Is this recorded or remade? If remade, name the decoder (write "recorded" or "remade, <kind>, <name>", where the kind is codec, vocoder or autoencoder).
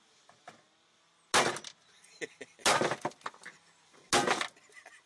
recorded